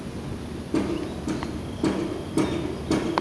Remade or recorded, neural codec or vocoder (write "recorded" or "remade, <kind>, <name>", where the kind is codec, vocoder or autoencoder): recorded